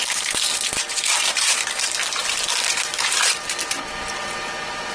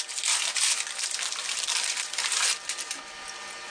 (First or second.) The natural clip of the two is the second